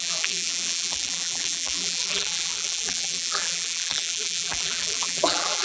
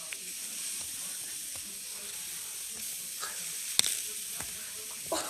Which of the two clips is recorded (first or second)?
second